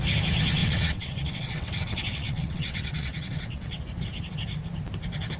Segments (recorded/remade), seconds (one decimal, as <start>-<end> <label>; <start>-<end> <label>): 0.0-0.6 recorded; 0.6-3.8 remade; 3.8-5.4 recorded